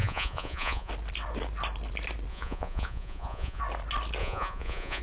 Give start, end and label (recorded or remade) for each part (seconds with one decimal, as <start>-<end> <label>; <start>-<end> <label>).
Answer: 0.0-0.9 remade; 0.9-2.3 recorded; 2.3-3.6 remade; 3.6-4.2 recorded; 4.2-5.0 remade